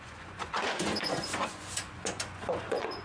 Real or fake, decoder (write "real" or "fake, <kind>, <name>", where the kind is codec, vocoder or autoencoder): fake, vocoder, Vocos